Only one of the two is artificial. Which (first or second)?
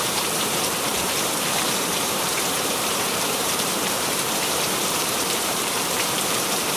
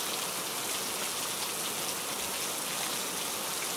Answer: first